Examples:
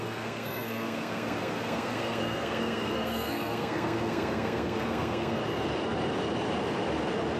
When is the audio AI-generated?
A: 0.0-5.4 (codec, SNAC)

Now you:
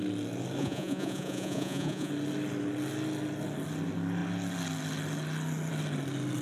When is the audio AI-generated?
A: 0.6-2.1 (vocoder, Vocos)

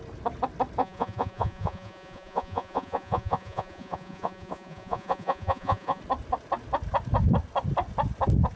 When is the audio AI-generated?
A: 0.8-6.0 (vocoder, Vocos)

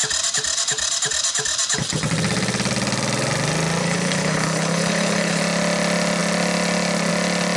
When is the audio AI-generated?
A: 3.8-5.4 (codec, HILCodec)

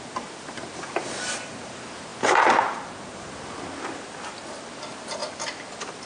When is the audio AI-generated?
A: none

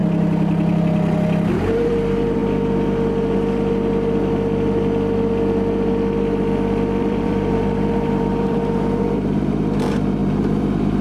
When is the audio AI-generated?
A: 1.5-2.4 (vocoder, BigVGAN v2); 7.0-11.0